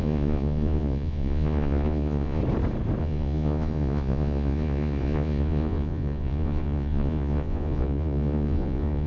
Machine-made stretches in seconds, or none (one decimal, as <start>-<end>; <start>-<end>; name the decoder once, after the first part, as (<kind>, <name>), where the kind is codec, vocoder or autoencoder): 0.0-2.4 (vocoder, Vocos); 3.0-9.1